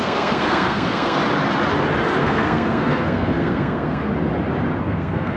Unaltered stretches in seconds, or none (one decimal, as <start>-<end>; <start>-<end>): 1.2-2.2; 4.1-4.8